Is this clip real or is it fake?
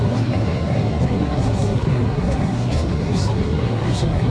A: fake